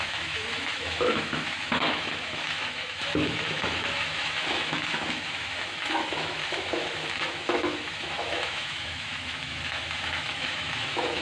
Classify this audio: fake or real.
fake